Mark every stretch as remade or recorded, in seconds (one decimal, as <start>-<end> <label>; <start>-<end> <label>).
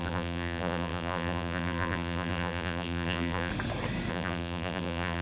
0.0-3.5 remade; 3.5-4.1 recorded; 4.1-5.2 remade